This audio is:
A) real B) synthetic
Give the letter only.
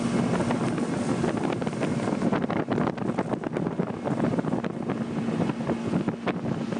A